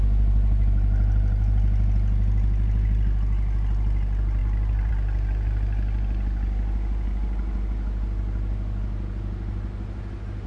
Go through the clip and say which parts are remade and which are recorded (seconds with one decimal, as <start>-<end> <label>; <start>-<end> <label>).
0.0-10.5 recorded

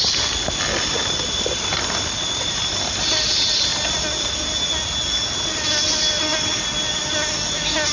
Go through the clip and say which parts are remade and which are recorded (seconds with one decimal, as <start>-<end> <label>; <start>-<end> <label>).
0.0-7.9 recorded

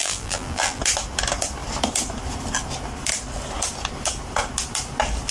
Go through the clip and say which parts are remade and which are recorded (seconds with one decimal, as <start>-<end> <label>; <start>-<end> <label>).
0.0-0.8 remade; 0.8-5.3 recorded

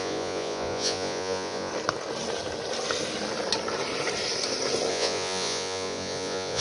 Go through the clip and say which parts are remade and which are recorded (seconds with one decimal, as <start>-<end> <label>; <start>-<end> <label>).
0.0-1.7 remade; 1.7-4.9 recorded; 4.9-6.6 remade

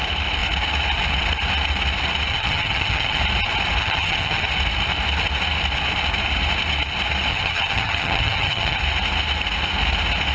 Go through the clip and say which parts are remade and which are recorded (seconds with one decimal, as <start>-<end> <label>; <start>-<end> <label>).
0.0-2.3 recorded; 2.3-3.2 remade; 3.2-3.8 recorded; 3.8-4.4 remade; 4.4-7.3 recorded; 7.3-8.8 remade; 8.8-10.3 recorded

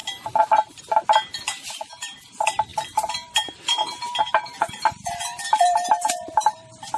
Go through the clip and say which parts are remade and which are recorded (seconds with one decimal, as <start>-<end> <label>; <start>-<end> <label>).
0.0-0.8 remade; 0.8-2.7 recorded; 2.7-7.0 remade